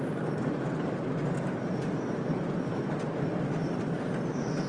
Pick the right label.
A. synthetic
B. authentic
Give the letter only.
B